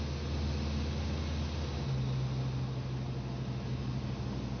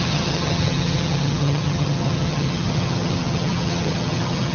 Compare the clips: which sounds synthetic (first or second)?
second